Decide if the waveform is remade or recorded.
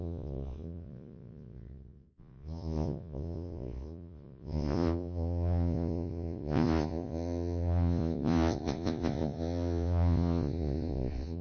remade